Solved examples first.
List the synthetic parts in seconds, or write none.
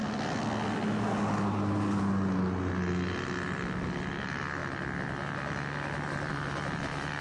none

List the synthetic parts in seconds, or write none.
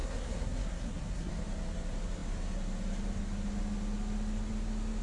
0.0-1.3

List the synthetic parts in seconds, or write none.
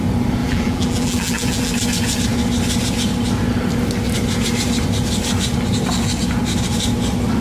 0.4-1.7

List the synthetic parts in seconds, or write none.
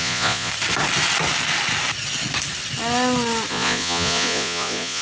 0.0-0.5; 3.5-5.0